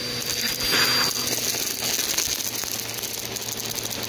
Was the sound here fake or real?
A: real